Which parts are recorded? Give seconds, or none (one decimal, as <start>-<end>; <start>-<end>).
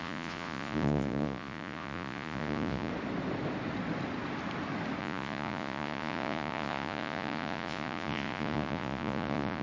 2.9-5.0